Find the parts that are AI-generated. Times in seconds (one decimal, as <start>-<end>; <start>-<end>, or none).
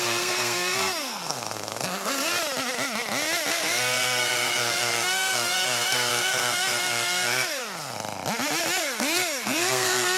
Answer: 0.0-2.3; 3.5-7.6; 8.8-10.2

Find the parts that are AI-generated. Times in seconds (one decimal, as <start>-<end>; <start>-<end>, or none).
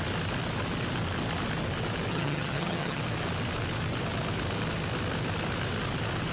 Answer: 2.1-3.0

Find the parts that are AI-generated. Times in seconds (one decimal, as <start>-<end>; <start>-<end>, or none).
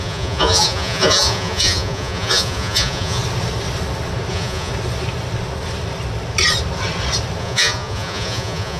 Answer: 0.0-3.2; 4.3-4.7; 7.4-8.8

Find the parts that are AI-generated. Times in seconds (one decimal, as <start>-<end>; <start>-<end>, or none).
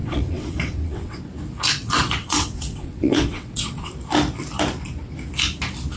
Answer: 0.0-1.2; 2.2-3.9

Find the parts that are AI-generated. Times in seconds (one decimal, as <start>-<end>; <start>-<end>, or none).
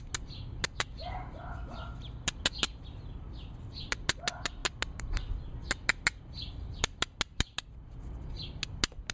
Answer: none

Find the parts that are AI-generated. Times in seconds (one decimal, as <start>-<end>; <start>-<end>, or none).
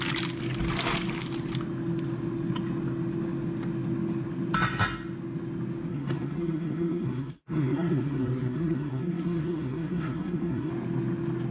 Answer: 5.9-10.7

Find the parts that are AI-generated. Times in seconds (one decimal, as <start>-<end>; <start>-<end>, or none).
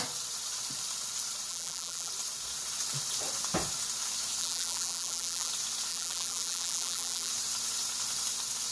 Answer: 1.5-2.1; 4.4-5.5; 5.9-7.3